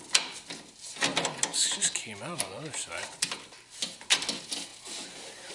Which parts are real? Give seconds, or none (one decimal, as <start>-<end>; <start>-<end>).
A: 0.0-1.5; 3.5-5.5